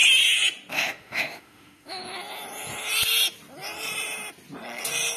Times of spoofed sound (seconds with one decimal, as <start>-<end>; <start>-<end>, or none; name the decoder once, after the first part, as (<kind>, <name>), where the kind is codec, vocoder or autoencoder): 0.7-2.0 (autoencoder, DAC-VAE)